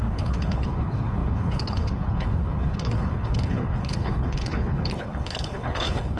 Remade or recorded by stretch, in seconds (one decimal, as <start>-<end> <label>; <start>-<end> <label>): 0.0-6.2 remade